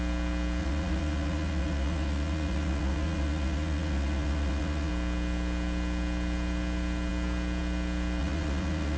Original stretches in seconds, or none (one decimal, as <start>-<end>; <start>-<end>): 0.0-0.6; 4.9-8.2